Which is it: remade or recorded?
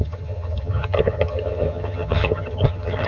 remade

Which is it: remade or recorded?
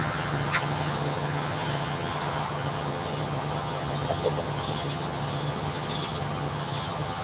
remade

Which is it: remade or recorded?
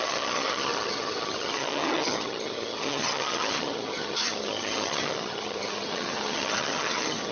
remade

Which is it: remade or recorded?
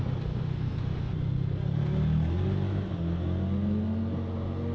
recorded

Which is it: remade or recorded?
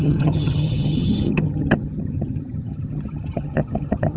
remade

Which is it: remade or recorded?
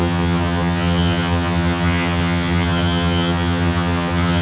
remade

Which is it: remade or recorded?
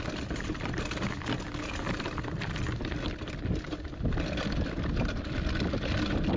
recorded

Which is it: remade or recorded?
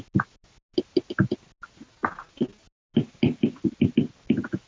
recorded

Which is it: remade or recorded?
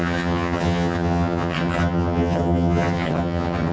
remade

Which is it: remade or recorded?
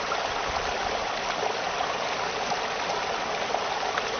recorded